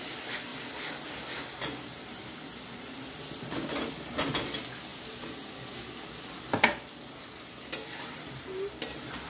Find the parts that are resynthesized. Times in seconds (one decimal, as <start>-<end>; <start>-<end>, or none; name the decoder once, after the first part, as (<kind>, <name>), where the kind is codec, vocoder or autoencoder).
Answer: none